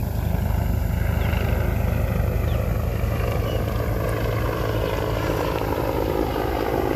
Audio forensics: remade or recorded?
recorded